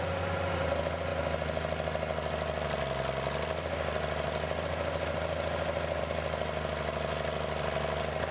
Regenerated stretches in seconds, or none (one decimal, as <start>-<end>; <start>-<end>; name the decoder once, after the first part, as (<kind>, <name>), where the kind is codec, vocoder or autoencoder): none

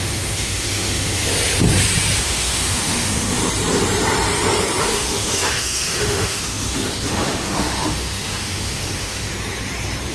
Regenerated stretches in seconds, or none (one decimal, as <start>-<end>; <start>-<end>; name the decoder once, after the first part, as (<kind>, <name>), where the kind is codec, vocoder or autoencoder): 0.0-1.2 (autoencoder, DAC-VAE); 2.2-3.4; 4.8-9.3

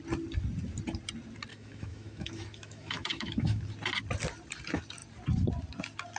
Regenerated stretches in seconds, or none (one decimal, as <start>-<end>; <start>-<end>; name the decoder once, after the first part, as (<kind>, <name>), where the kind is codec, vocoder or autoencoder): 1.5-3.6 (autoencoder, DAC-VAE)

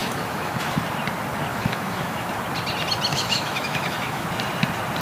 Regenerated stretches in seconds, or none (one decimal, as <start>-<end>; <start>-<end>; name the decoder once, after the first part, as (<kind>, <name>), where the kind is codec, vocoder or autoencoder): 0.0-0.8 (autoencoder, DAC-VAE); 1.5-2.3; 3.1-4.3

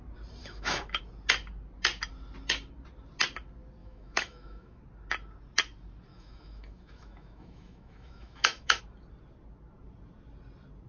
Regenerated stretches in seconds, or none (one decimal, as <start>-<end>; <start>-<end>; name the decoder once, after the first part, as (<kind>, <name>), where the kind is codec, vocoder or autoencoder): 0.4-1.0 (autoencoder, DAC-VAE); 3.8-4.8; 6.1-8.8